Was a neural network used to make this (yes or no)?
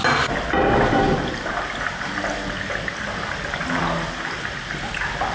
no